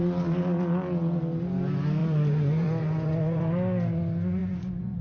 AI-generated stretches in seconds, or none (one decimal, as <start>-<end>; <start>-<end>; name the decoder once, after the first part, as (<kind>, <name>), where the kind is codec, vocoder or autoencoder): 2.0-3.4 (vocoder, Vocos); 4.4-5.0